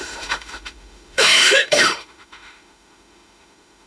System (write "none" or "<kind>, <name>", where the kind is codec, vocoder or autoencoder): autoencoder, DAC-VAE